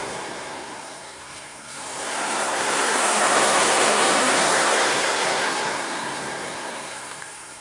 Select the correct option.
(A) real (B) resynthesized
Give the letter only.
B